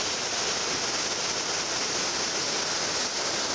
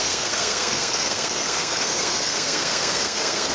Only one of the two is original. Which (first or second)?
first